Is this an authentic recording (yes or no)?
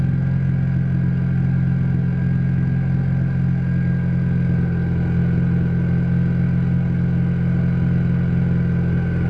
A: yes